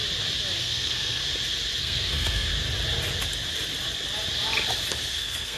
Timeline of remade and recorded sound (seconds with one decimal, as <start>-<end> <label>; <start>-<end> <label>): 0.0-0.6 recorded; 0.6-1.2 remade; 1.2-1.8 recorded; 1.8-2.5 remade; 2.5-5.1 recorded; 5.1-5.6 remade